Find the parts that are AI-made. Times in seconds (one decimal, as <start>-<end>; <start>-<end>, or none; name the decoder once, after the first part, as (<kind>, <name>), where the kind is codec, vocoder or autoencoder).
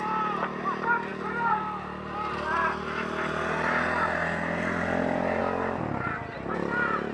none